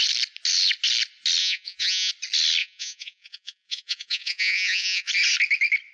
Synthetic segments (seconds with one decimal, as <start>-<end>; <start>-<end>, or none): 1.4-2.1; 2.6-5.1